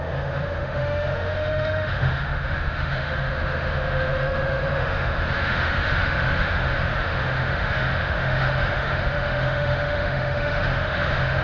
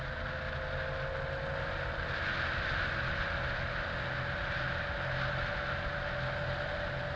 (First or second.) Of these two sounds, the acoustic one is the second